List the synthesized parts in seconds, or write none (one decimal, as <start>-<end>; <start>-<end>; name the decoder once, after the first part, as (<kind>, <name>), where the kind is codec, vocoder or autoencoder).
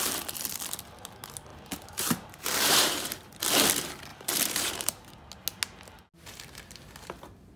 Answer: 1.5-3.3 (vocoder, BigVGAN v2); 4.1-5.3